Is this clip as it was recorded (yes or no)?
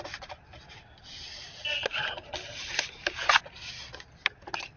yes